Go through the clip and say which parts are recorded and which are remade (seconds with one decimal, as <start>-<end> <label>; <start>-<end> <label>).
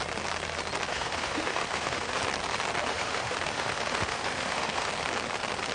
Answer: 0.0-0.9 recorded; 0.9-2.2 remade; 2.2-2.9 recorded; 2.9-4.9 remade; 4.9-5.7 recorded